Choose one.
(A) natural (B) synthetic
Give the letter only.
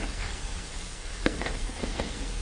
B